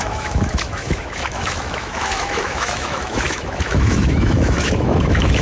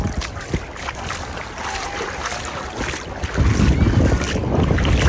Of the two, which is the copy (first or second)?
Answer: first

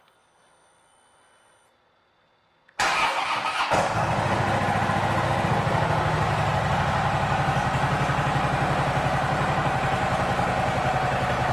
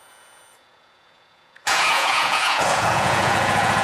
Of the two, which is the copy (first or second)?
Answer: second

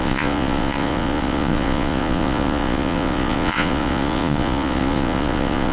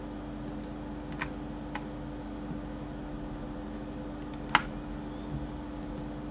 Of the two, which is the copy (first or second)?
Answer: first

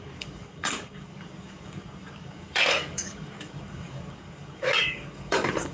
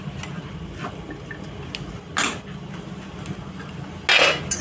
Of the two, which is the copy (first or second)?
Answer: first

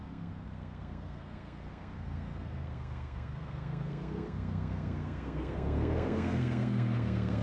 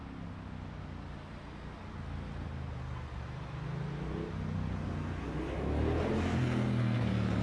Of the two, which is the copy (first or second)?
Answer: first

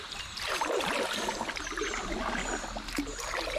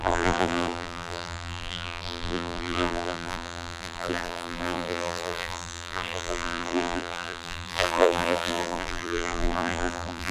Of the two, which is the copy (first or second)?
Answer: second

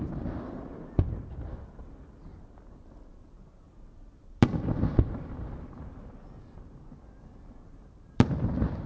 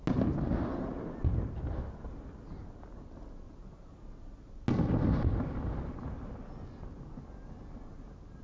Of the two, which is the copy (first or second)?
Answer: first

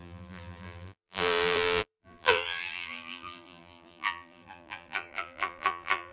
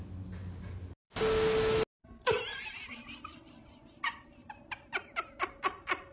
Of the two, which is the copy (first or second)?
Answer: first